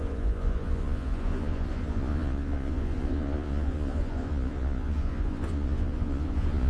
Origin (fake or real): fake